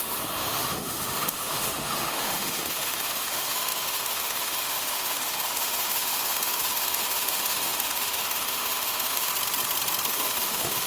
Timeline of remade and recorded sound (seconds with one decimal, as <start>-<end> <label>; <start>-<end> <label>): 0.0-9.3 remade; 9.3-10.1 recorded; 10.1-10.9 remade